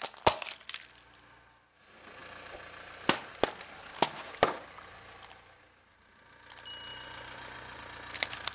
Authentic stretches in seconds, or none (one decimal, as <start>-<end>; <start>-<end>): 0.0-6.9; 7.8-8.5